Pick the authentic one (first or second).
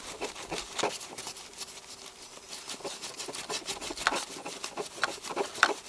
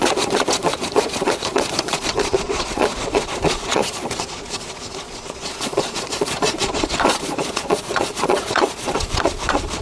first